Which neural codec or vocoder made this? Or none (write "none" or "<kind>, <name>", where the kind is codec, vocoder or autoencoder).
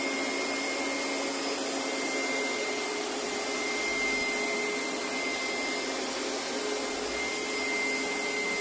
none